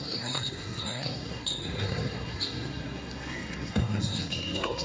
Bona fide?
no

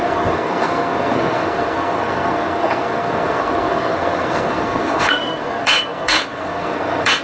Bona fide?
no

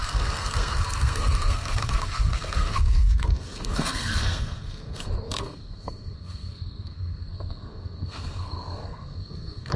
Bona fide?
no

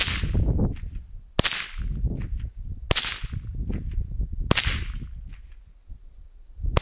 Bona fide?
yes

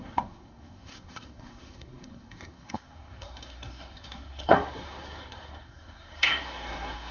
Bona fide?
no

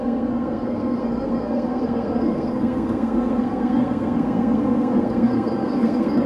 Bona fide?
no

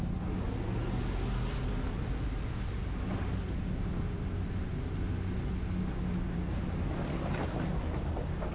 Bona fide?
yes